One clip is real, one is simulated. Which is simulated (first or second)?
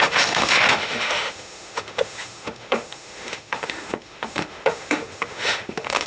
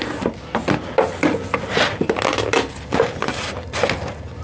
first